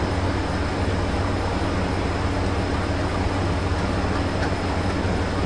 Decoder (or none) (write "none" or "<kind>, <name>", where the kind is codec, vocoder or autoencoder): none